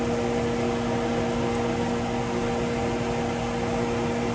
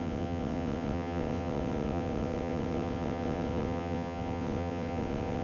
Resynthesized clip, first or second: second